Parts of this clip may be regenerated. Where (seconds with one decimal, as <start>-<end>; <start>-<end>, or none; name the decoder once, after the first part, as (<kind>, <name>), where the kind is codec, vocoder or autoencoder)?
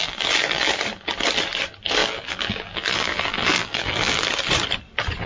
0.0-0.7 (vocoder, BigVGAN v2); 2.0-4.3